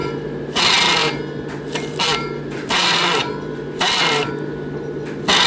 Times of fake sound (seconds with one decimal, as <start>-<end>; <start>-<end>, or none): 0.0-0.6; 1.0-4.3